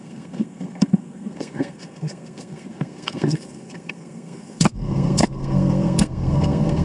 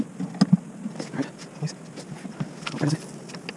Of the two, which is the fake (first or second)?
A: first